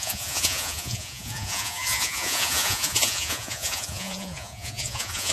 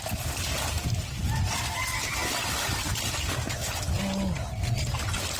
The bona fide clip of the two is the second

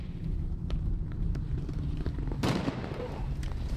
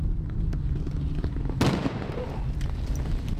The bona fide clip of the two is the second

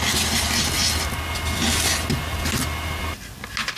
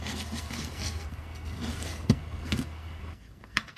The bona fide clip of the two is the first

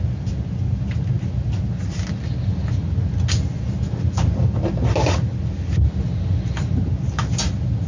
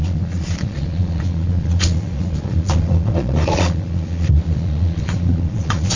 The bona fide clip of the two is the first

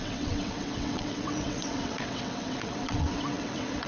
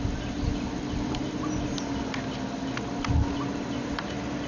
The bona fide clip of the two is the second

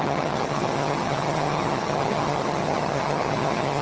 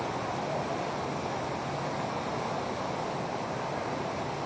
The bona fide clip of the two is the second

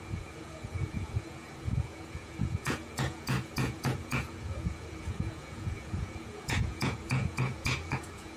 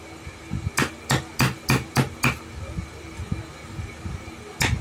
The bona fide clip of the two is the second